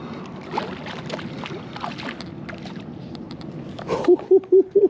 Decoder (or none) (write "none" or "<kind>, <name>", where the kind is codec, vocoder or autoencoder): none